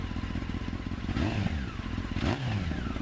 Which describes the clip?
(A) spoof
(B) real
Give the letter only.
B